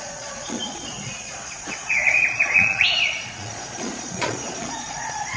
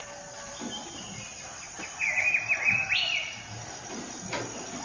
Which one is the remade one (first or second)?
first